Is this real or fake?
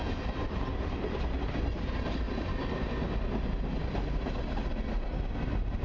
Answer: real